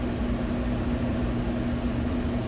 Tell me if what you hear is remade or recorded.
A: recorded